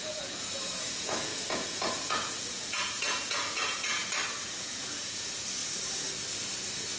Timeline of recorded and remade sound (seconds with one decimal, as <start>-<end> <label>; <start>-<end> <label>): 0.0-4.0 remade; 4.0-4.6 recorded; 4.6-5.6 remade; 5.6-7.0 recorded